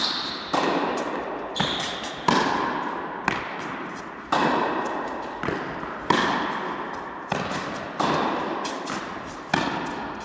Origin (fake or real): real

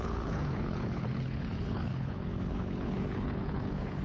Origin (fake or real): fake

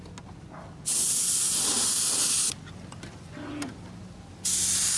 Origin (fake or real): real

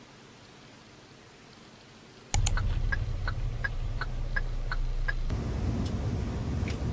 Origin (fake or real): real